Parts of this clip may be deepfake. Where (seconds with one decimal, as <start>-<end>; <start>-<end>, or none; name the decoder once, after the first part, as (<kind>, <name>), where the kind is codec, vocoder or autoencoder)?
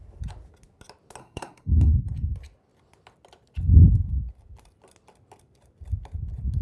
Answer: 1.2-2.0 (codec, SNAC)